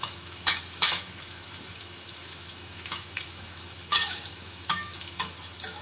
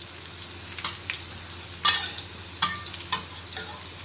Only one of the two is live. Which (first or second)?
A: second